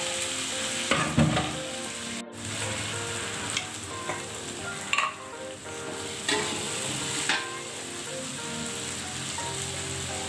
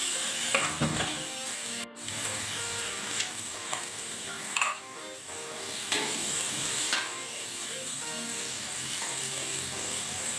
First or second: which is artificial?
second